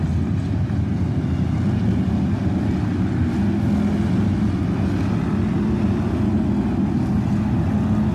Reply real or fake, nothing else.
real